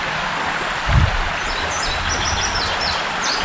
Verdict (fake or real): real